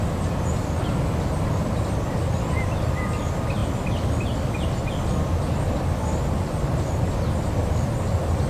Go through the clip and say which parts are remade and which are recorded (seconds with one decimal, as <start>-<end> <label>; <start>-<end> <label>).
0.0-8.5 recorded